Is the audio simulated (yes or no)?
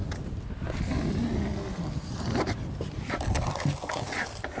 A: no